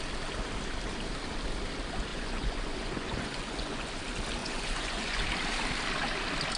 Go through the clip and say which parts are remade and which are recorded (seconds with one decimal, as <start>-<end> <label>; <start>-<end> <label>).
0.0-2.1 recorded; 2.1-3.9 remade; 3.9-4.4 recorded; 4.4-5.2 remade; 5.2-6.6 recorded